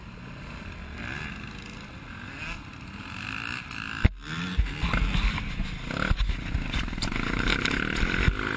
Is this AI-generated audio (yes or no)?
no